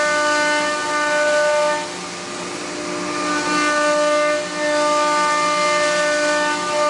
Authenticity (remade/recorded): recorded